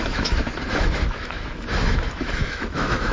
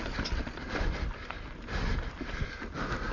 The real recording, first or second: second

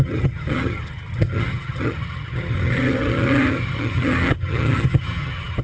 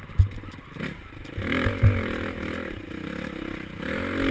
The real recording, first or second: second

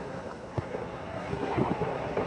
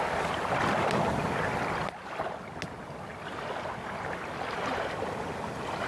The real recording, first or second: second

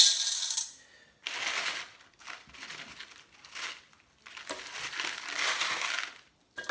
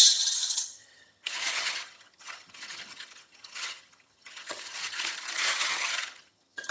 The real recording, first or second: first